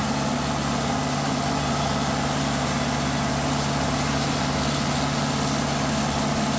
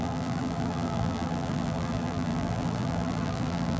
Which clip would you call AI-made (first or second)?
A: second